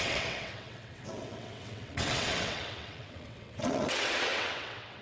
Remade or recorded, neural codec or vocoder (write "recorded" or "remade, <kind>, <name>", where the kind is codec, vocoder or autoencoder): remade, vocoder, WaveNeXt